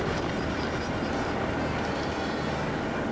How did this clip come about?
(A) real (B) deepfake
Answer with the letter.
A